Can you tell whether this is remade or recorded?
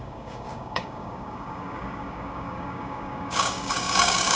remade